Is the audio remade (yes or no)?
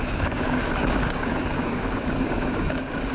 yes